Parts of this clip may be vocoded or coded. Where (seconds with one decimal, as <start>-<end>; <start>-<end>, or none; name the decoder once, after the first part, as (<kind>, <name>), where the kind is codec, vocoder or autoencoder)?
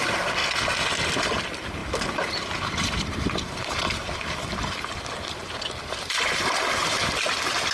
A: 0.0-0.4 (vocoder, BigVGAN v2); 1.4-7.7